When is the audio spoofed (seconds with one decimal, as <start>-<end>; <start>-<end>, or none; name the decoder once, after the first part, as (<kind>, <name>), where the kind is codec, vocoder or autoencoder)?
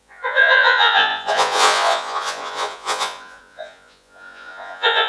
0.0-5.1 (vocoder, Vocos)